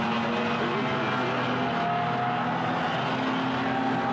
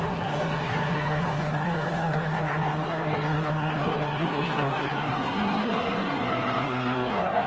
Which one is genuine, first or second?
first